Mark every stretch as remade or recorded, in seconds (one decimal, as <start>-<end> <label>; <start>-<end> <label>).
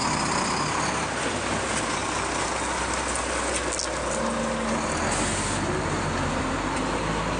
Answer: 0.0-7.4 recorded